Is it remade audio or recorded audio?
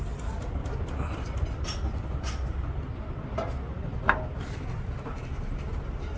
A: recorded